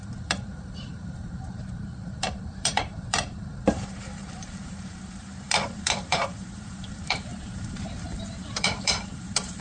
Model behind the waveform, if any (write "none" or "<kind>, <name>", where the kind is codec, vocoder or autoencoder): vocoder, BigVGAN v2